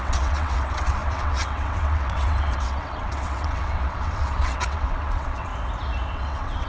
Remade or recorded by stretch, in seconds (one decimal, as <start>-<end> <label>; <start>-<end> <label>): 0.0-5.5 remade; 5.5-6.1 recorded; 6.1-6.7 remade